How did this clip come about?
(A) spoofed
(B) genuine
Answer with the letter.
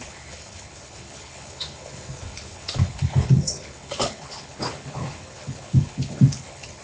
A